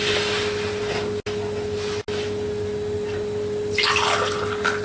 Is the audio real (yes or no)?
yes